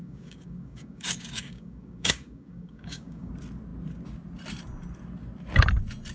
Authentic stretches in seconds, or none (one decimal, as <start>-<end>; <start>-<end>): 3.3-6.1